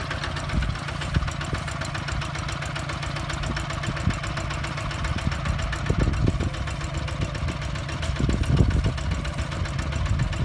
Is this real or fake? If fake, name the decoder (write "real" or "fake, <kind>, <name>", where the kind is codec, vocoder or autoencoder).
real